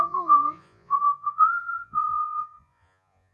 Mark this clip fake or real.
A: fake